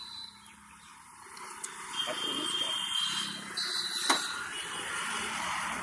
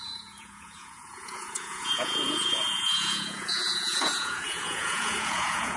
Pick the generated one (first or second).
second